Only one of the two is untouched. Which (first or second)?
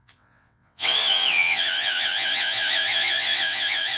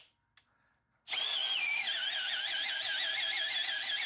second